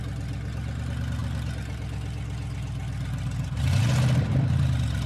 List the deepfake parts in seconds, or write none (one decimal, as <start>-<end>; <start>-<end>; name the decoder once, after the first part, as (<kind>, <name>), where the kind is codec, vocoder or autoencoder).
none